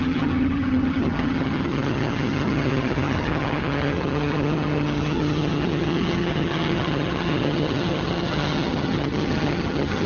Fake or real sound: fake